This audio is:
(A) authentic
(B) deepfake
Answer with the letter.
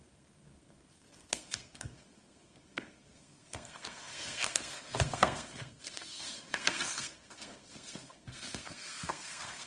B